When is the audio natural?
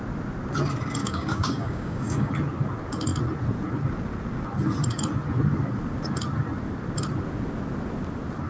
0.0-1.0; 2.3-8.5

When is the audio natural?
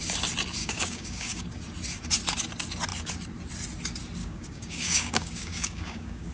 0.0-0.6; 1.4-4.2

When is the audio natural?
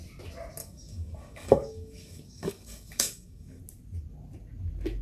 0.0-0.6; 3.6-5.0